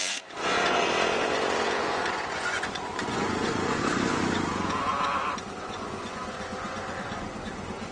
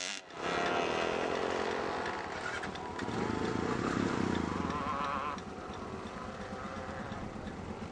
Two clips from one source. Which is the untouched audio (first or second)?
second